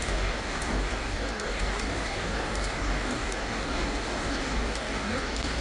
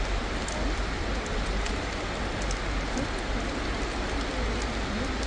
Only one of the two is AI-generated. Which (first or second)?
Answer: first